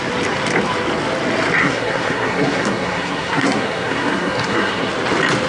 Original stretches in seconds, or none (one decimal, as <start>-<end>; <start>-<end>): 0.0-1.6; 4.9-5.5